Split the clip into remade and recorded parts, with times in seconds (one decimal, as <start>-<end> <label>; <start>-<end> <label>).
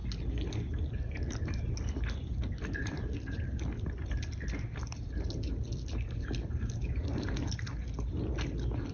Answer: 0.0-8.9 recorded